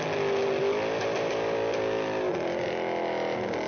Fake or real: real